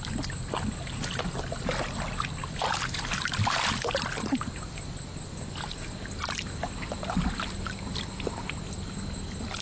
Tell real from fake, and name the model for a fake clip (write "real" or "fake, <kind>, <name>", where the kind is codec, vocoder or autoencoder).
real